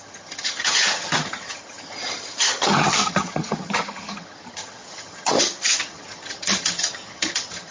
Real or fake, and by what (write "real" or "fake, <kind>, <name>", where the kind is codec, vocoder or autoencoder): fake, vocoder, HiFi-GAN